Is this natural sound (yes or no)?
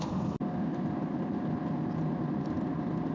yes